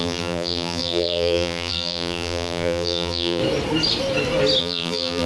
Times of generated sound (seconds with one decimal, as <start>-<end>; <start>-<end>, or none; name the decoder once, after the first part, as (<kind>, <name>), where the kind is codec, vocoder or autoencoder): 0.0-3.4 (vocoder, BigVGAN v2); 4.6-5.3